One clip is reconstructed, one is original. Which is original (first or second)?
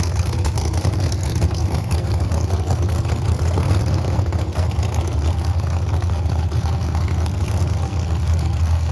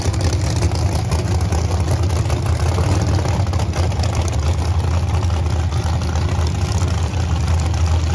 second